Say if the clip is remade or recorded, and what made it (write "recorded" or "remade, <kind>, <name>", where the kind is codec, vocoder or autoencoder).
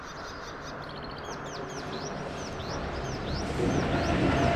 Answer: recorded